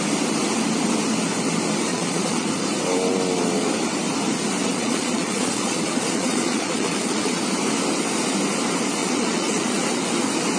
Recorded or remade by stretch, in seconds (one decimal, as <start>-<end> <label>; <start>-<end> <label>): 0.0-1.9 recorded; 1.9-2.5 remade; 2.5-4.6 recorded; 4.6-7.4 remade; 7.4-9.0 recorded; 9.0-9.8 remade; 9.8-10.6 recorded